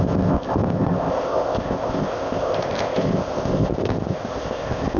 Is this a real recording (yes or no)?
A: no